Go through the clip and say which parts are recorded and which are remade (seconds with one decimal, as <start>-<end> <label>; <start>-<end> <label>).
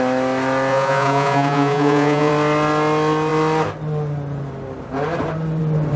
0.0-0.7 recorded; 0.7-2.3 remade; 2.3-6.0 recorded